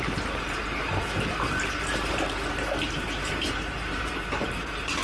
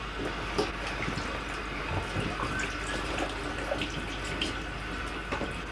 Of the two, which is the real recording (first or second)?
second